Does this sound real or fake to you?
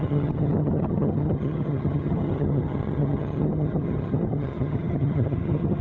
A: fake